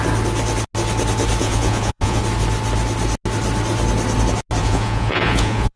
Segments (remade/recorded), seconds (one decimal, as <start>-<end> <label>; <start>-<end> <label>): 0.0-1.4 recorded; 1.4-2.2 remade; 2.2-4.6 recorded; 4.6-5.8 remade